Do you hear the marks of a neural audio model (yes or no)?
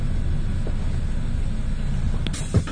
no